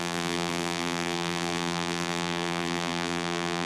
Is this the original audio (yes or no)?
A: no